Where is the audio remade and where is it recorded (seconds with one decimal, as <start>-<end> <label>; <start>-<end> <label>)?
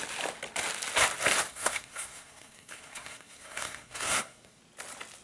0.0-1.5 recorded; 1.5-4.6 remade; 4.6-5.2 recorded